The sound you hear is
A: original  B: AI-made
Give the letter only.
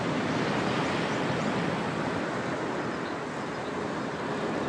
A